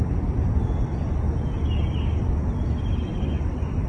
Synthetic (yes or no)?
no